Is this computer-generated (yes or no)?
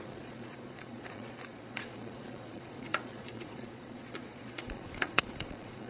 yes